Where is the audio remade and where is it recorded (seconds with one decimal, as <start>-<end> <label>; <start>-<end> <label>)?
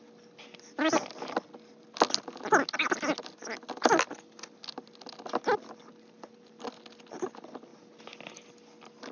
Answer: 0.0-9.1 recorded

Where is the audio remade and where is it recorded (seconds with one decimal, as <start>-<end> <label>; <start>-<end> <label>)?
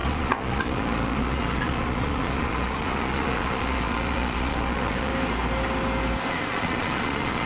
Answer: 0.0-5.1 remade; 5.1-6.3 recorded; 6.3-7.5 remade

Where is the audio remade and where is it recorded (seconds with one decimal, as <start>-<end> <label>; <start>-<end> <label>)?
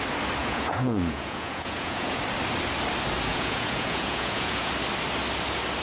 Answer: 0.0-0.4 recorded; 0.4-2.2 remade; 2.2-3.3 recorded; 3.3-4.7 remade; 4.7-5.8 recorded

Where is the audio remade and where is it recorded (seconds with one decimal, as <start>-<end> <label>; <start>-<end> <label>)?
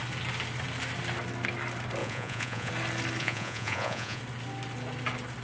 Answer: 0.0-2.0 recorded; 2.0-2.7 remade; 2.7-3.2 recorded; 3.2-4.2 remade; 4.2-5.4 recorded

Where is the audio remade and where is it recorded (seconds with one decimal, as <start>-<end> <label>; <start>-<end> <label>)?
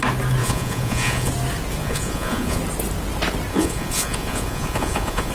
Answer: 0.0-0.4 recorded; 0.4-1.3 remade; 1.3-1.8 recorded; 1.8-2.6 remade; 2.6-3.5 recorded; 3.5-5.3 remade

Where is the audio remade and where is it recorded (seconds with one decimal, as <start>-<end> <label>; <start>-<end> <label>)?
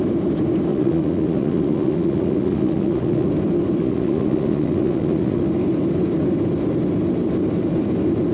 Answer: 0.0-0.7 recorded; 0.7-3.3 remade; 3.3-3.8 recorded; 3.8-5.4 remade; 5.4-8.3 recorded